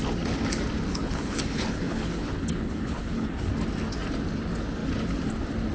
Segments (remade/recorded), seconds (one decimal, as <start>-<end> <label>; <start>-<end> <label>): 0.0-0.9 recorded; 0.9-3.5 remade; 3.5-5.7 recorded